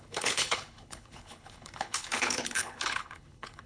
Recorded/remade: remade